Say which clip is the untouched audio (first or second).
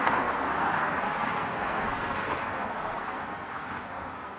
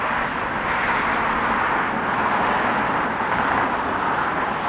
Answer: second